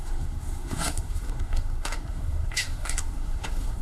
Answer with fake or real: fake